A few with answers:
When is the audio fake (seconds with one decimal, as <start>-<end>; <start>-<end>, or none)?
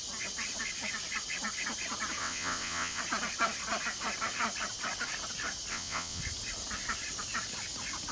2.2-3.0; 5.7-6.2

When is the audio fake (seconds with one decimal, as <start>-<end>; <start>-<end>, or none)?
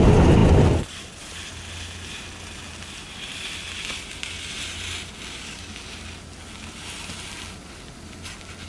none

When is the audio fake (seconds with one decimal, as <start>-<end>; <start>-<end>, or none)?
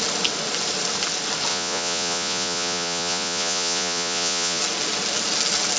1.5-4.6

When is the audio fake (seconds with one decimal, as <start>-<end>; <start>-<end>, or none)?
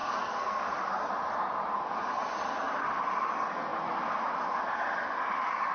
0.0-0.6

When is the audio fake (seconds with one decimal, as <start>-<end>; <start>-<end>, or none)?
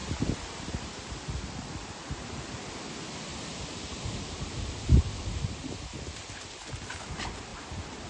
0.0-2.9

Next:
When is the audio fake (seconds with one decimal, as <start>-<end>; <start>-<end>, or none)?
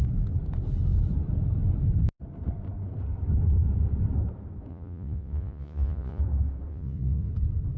4.7-6.2; 6.7-7.3